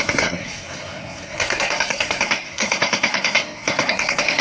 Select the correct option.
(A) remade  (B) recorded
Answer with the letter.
A